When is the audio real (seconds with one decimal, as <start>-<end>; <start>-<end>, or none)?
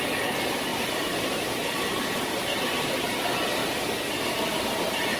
0.0-0.7; 3.1-5.2